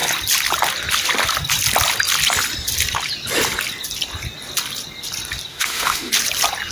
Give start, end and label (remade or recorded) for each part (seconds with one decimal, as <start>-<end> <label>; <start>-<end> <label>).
0.0-5.5 recorded; 5.5-6.1 remade; 6.1-6.7 recorded